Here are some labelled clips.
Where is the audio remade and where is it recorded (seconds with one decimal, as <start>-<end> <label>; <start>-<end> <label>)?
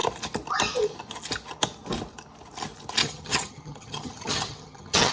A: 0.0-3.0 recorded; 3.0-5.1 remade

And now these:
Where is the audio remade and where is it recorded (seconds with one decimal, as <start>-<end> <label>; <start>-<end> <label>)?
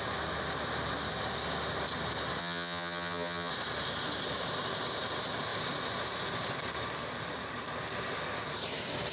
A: 0.0-2.4 recorded; 2.4-3.5 remade; 3.5-9.1 recorded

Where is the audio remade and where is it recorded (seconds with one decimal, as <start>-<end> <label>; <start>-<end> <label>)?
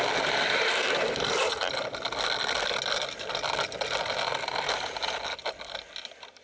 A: 0.0-6.4 recorded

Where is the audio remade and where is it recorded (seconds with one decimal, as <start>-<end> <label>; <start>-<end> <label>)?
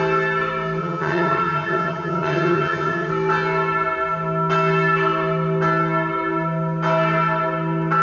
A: 0.0-0.8 recorded; 0.8-3.1 remade; 3.1-8.0 recorded